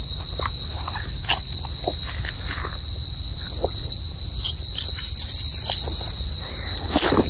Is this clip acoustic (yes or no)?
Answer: yes